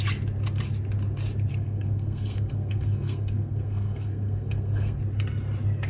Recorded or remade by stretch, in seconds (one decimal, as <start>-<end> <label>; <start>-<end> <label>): 0.0-1.5 recorded; 1.5-5.0 remade; 5.0-5.9 recorded